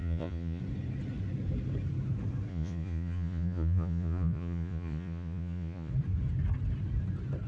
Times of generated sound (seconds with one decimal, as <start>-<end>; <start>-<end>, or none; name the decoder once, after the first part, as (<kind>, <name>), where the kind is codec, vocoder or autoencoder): 0.0-0.6 (vocoder, Vocos); 2.5-5.9